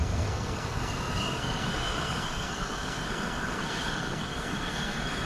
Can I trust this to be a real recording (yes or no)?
no